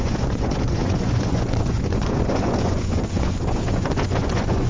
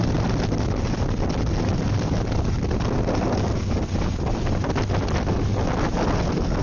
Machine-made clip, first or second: first